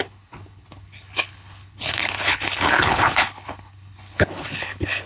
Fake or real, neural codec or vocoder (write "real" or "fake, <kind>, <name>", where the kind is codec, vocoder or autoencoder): fake, codec, HILCodec